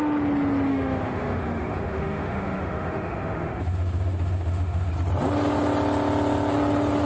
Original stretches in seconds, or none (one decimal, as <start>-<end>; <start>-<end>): 0.0-0.7; 4.9-7.0